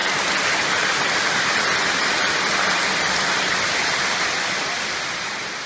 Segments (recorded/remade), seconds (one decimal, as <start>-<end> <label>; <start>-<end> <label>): 0.0-5.7 recorded